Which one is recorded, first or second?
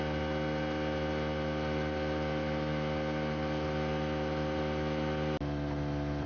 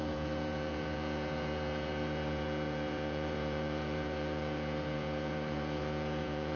first